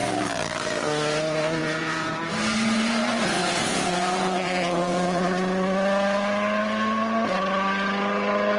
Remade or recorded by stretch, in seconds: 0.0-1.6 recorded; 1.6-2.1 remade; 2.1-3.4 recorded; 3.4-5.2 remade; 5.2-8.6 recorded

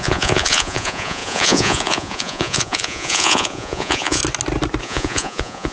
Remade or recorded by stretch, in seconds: 0.0-4.2 remade; 4.2-4.8 recorded; 4.8-5.7 remade